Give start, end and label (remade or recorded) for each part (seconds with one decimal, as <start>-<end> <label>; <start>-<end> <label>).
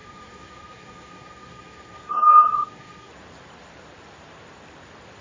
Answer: 0.0-3.1 remade; 3.1-5.2 recorded